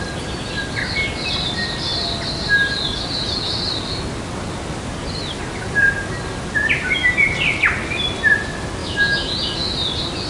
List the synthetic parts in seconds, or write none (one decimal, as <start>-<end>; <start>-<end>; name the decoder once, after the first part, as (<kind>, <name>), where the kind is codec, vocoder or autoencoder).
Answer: 8.8-9.3 (autoencoder, DAC-VAE)